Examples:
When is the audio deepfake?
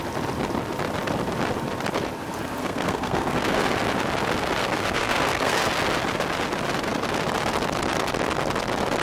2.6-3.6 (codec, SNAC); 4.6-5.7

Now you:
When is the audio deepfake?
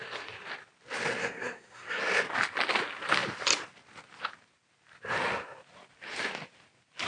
1.2-2.0 (codec, SNAC)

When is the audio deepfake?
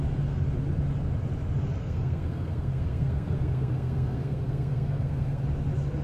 1.8-5.4 (codec, SNAC)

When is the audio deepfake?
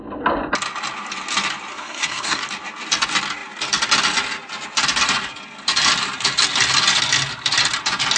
1.7-2.4 (codec, SNAC)